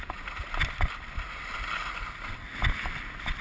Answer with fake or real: real